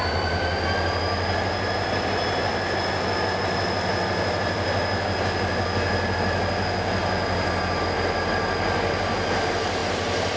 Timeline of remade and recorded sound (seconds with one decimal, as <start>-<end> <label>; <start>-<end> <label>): 0.0-10.4 recorded